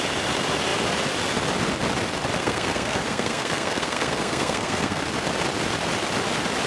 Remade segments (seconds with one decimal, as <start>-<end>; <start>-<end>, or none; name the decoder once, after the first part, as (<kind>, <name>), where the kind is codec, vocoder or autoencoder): 2.4-5.0 (codec, SNAC)